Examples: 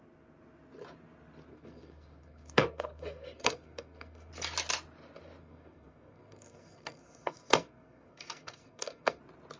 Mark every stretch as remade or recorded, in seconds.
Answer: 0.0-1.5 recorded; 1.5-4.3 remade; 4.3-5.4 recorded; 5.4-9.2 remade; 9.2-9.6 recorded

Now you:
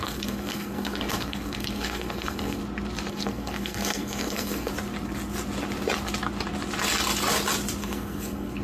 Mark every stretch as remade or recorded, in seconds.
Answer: 0.0-2.6 remade; 2.6-3.1 recorded; 3.1-4.7 remade; 4.7-7.8 recorded; 7.8-8.6 remade

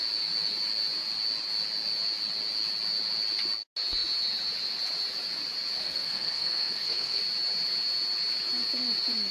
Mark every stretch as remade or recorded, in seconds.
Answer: 0.0-5.8 recorded; 5.8-7.2 remade; 7.2-9.3 recorded

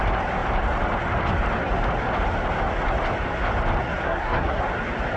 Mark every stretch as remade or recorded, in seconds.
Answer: 0.0-4.0 recorded; 4.0-4.6 remade; 4.6-5.2 recorded

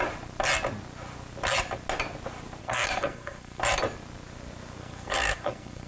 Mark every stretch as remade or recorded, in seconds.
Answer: 0.0-2.6 recorded; 2.6-3.6 remade; 3.6-4.8 recorded; 4.8-5.9 remade

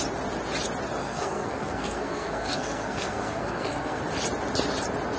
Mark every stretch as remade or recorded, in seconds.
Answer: 0.0-1.0 recorded; 1.0-4.0 remade; 4.0-5.2 recorded

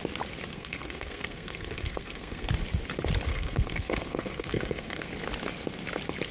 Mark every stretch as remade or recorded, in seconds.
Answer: 0.0-0.5 recorded; 0.5-2.5 remade; 2.5-3.3 recorded; 3.3-5.1 remade; 5.1-6.3 recorded

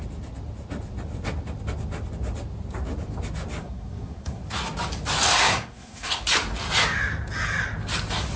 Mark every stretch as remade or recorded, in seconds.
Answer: 0.0-3.6 recorded; 3.6-4.4 remade; 4.4-5.4 recorded; 5.4-6.2 remade; 6.2-8.4 recorded